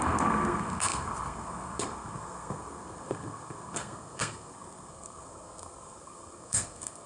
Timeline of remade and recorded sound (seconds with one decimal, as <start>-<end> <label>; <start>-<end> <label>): 0.0-7.1 remade